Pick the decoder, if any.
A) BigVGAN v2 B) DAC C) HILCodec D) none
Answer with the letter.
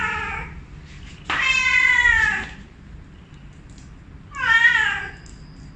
D